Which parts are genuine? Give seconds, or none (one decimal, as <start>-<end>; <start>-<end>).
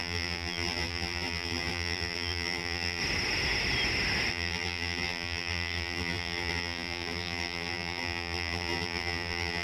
3.0-4.3